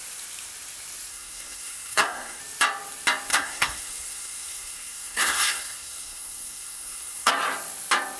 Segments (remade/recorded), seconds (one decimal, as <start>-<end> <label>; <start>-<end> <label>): 0.0-1.1 recorded; 1.1-2.4 remade; 2.4-3.3 recorded; 3.3-7.3 remade; 7.3-8.2 recorded